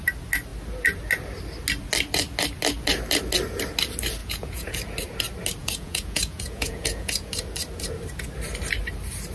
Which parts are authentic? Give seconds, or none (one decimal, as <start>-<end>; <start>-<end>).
0.0-4.2; 4.7-5.6; 7.3-9.3